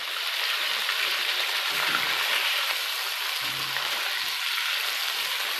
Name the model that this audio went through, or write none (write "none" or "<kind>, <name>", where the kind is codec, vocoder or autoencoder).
none